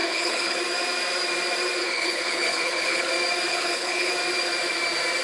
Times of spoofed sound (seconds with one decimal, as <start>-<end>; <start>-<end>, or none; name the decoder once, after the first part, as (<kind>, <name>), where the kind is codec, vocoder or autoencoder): 0.0-0.6 (codec, HILCodec); 1.8-3.1; 3.5-4.1